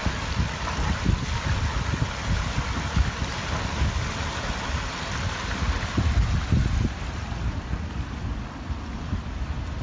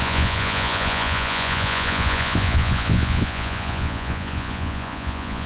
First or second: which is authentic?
first